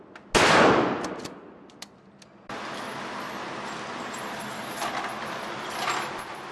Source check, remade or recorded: recorded